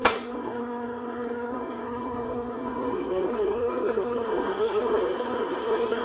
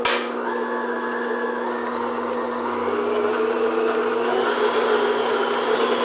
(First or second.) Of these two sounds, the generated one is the first